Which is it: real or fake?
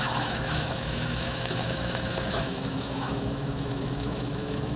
fake